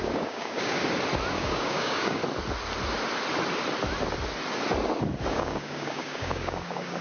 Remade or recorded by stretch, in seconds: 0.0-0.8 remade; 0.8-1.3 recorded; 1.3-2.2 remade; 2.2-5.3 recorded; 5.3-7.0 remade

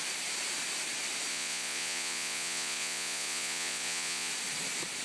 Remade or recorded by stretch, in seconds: 0.0-1.3 recorded; 1.3-4.3 remade; 4.3-5.0 recorded

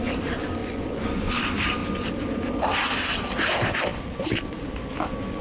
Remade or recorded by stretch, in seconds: 0.0-0.6 recorded; 0.6-1.3 remade; 1.3-5.4 recorded

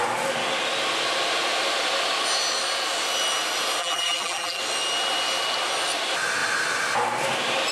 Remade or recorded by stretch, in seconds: 0.0-3.8 recorded; 3.8-4.6 remade; 4.6-7.7 recorded

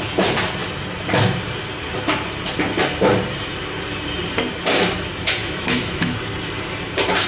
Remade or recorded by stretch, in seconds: 0.0-5.4 recorded; 5.4-6.2 remade; 6.2-7.3 recorded

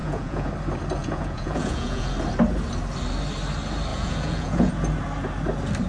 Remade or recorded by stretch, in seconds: 0.0-0.5 remade; 0.5-1.0 recorded; 1.0-2.1 remade; 2.1-3.9 recorded; 3.9-4.7 remade; 4.7-5.9 recorded

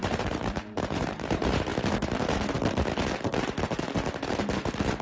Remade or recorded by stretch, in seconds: 0.0-1.7 remade; 1.7-5.0 recorded

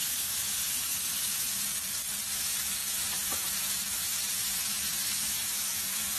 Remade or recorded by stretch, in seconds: 0.0-1.7 remade; 1.7-2.3 recorded; 2.3-6.2 remade